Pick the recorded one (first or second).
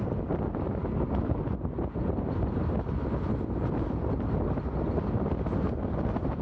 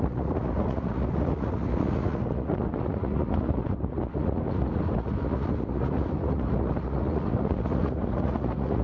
first